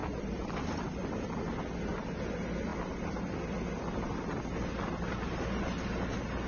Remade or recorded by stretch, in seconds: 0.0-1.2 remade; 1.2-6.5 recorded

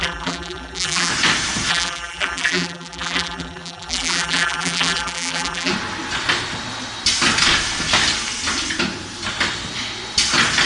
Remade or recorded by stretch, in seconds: 0.0-1.1 remade; 1.1-1.7 recorded; 1.7-5.7 remade; 5.7-10.7 recorded

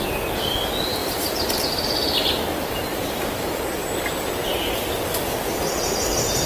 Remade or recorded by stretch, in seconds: 0.0-1.0 recorded; 1.0-1.6 remade; 1.6-2.9 recorded; 2.9-3.6 remade; 3.6-6.5 recorded

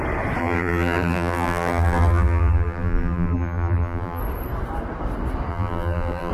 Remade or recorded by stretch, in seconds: 0.0-0.4 recorded; 0.4-4.2 remade; 4.2-5.5 recorded; 5.5-6.3 remade

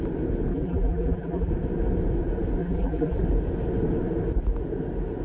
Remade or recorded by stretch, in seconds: 0.0-0.5 recorded; 0.5-1.5 remade; 1.5-2.6 recorded; 2.6-3.2 remade; 3.2-5.2 recorded

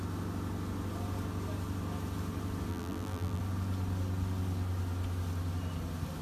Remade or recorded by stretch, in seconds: 0.0-2.7 recorded; 2.7-3.4 remade; 3.4-6.2 recorded

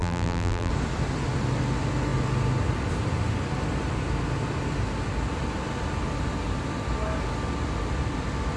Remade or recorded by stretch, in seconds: 0.0-0.7 remade; 0.7-8.6 recorded

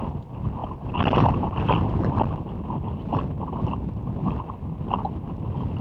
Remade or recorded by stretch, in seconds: 0.0-0.6 recorded; 0.6-2.0 remade; 2.0-5.8 recorded